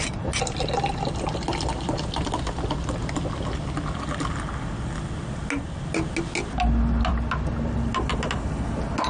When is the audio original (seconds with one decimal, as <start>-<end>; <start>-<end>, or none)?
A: 0.0-9.1